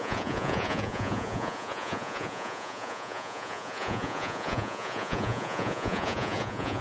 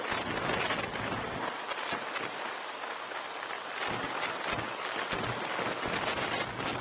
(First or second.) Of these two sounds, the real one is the second